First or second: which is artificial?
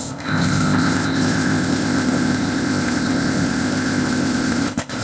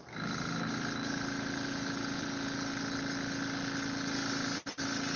first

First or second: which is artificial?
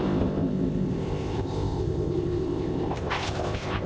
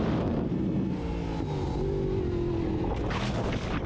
first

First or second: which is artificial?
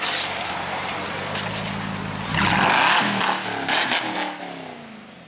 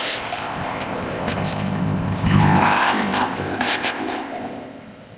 second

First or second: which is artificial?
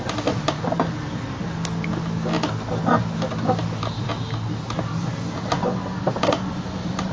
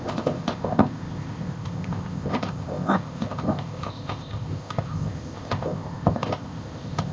second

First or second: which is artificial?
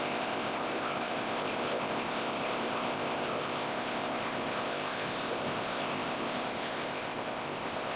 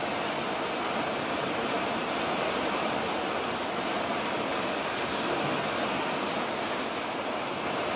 first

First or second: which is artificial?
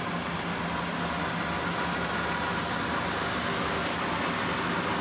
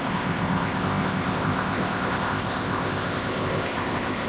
second